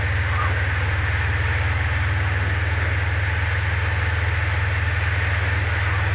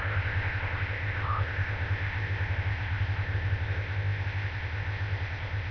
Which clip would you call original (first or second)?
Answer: first